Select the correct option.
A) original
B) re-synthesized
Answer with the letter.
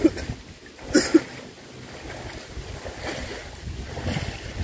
A